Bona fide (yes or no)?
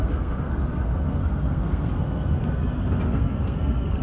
no